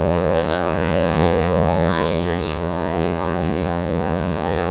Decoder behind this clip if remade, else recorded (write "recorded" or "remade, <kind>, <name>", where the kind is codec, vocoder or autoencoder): remade, vocoder, Vocos